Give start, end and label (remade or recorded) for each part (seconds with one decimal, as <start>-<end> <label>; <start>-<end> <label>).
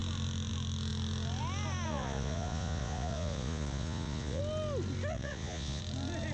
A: 0.0-1.9 recorded; 1.9-4.4 remade; 4.4-5.1 recorded; 5.1-5.8 remade; 5.8-6.3 recorded